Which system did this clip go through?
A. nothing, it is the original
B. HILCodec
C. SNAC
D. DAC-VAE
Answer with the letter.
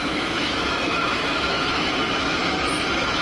D